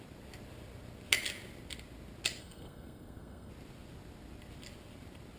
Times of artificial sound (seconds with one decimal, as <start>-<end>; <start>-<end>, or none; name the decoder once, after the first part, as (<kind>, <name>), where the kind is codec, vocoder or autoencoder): 2.4-3.5 (codec, SNAC)